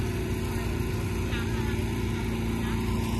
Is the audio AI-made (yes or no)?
no